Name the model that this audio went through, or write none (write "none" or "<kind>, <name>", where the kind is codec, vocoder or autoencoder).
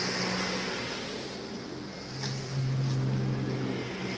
none